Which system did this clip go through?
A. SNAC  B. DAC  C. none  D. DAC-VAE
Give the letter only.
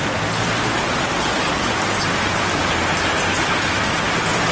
C